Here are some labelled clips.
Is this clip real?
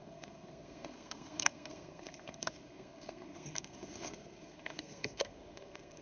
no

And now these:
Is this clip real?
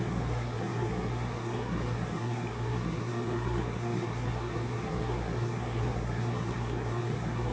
no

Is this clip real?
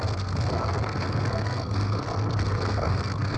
no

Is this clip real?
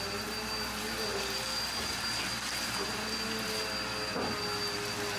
yes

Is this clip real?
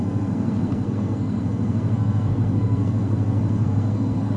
no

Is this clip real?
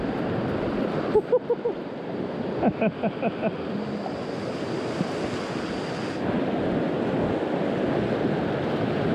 yes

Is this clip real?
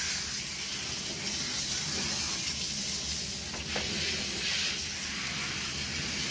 yes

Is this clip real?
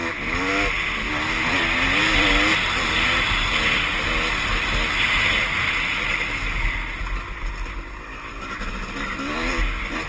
yes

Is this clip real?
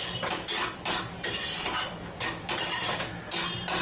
yes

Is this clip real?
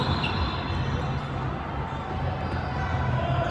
yes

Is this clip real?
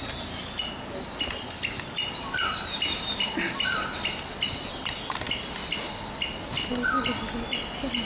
yes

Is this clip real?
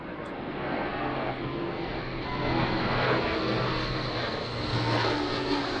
no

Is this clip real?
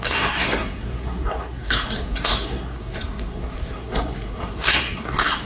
no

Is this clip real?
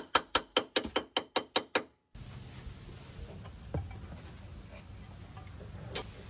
yes